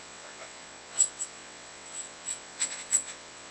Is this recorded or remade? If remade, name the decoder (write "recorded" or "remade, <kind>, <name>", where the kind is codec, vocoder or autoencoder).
remade, vocoder, WaveNeXt